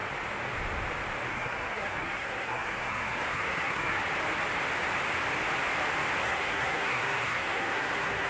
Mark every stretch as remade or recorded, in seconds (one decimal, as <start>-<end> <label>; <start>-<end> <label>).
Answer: 0.0-1.3 recorded; 1.3-4.0 remade; 4.0-6.2 recorded; 6.2-8.3 remade